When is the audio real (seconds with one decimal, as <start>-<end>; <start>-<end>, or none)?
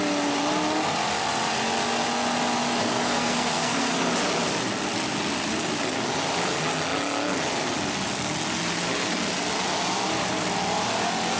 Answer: 0.0-2.8; 4.1-11.4